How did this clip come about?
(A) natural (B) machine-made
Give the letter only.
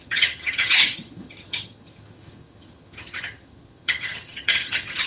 B